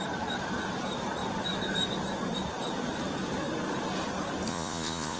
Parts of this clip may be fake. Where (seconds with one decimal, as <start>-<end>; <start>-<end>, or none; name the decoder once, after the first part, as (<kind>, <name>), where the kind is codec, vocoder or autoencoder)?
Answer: 4.5-5.2 (vocoder, Vocos)